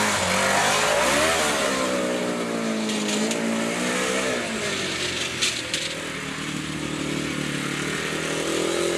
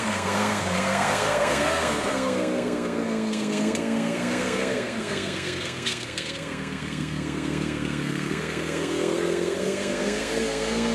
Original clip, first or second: first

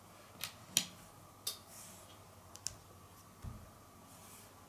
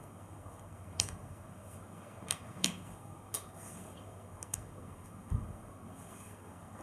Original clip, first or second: first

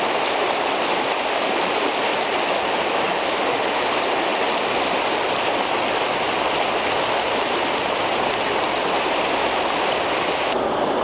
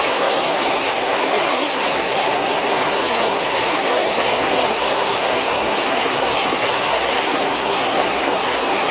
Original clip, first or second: first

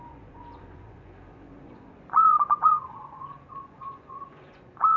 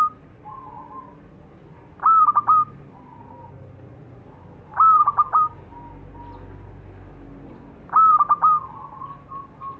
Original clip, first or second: second